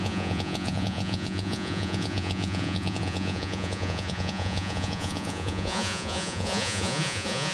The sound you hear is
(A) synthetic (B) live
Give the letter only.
A